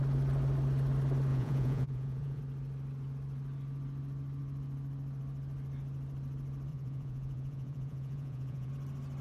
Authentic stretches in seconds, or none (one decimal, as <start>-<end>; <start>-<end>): 0.0-1.3; 2.4-6.7; 8.7-9.2